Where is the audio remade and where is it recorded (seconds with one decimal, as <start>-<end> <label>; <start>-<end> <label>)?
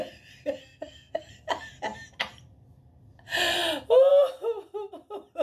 0.0-0.6 recorded; 0.6-1.3 remade; 1.3-5.4 recorded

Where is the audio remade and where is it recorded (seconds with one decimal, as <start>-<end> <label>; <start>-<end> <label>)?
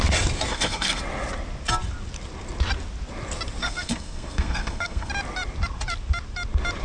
0.0-0.5 recorded; 0.5-1.0 remade; 1.0-3.6 recorded; 3.6-5.1 remade; 5.1-6.8 recorded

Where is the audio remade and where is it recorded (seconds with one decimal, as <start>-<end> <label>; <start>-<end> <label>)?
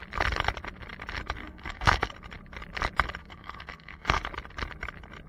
0.0-1.4 recorded; 1.4-2.1 remade; 2.1-3.2 recorded; 3.2-4.2 remade; 4.2-5.3 recorded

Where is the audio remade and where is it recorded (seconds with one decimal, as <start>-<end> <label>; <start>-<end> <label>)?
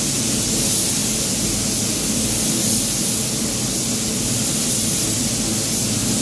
0.0-6.2 recorded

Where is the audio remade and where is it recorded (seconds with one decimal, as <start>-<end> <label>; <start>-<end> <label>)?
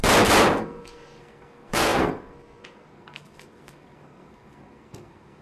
0.0-0.6 recorded; 0.6-5.4 remade